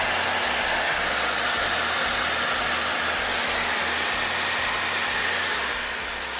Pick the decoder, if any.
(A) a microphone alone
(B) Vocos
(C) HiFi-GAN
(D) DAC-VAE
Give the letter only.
A